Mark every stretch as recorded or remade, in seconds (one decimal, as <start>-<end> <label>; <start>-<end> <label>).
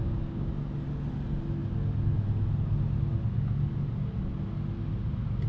0.0-0.5 remade; 0.5-5.5 recorded